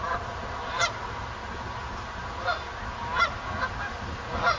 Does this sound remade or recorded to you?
recorded